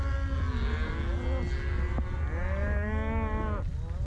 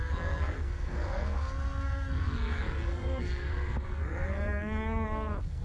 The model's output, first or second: second